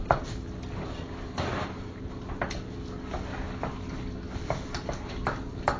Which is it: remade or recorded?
recorded